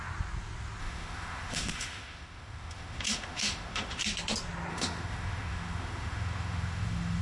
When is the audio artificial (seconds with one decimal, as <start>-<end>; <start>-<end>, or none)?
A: 0.8-4.0; 4.7-7.2